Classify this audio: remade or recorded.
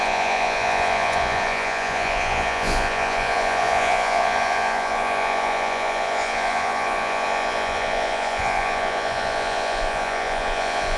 remade